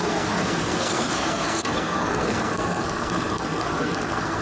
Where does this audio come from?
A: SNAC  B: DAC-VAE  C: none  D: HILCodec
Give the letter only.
A